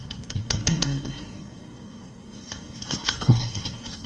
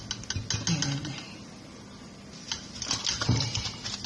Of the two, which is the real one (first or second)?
second